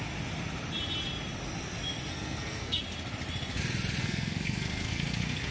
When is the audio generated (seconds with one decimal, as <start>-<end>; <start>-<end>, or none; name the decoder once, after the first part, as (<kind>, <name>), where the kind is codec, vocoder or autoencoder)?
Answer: 2.1-2.8 (codec, SNAC); 4.0-5.5